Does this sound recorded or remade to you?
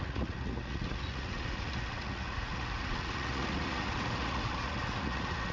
remade